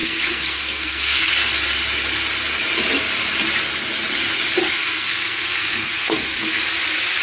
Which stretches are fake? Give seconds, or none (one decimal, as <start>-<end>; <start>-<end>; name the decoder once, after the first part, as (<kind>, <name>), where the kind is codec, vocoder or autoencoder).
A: 0.0-1.3 (codec, SNAC); 4.6-6.6